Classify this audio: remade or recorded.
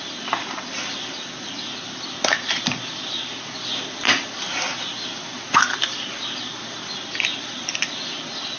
recorded